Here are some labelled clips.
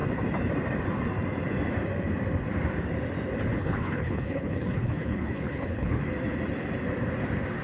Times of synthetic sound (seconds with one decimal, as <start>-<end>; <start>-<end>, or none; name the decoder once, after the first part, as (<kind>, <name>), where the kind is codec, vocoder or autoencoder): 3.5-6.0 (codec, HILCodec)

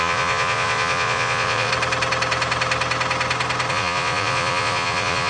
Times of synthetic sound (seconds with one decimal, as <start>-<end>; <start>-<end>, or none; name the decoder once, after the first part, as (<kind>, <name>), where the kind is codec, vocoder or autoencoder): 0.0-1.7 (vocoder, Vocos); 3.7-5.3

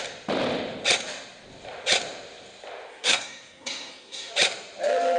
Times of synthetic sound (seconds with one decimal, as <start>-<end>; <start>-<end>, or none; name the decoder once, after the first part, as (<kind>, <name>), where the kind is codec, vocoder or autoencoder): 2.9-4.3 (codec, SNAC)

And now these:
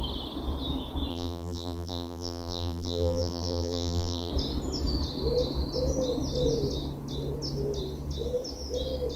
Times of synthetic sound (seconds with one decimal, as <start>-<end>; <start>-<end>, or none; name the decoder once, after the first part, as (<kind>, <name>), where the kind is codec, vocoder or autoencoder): 1.1-4.3 (vocoder, BigVGAN v2)

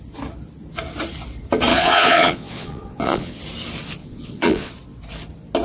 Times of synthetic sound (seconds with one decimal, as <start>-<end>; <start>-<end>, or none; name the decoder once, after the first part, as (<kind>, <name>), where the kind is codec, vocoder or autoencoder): 1.7-3.4 (vocoder, Vocos); 4.0-4.7